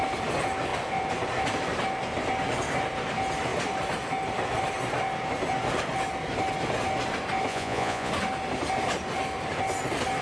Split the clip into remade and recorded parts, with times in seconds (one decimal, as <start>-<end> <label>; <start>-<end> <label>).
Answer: 0.0-7.5 recorded; 7.5-8.1 remade; 8.1-10.2 recorded